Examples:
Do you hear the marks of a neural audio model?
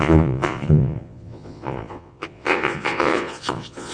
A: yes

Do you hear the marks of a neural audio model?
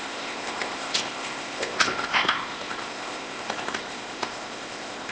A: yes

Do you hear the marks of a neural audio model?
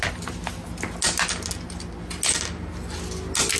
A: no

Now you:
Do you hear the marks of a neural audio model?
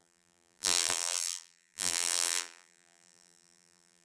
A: yes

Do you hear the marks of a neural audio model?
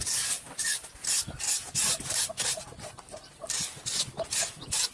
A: no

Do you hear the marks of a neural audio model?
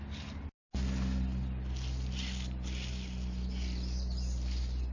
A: no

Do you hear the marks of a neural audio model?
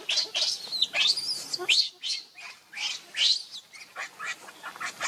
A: no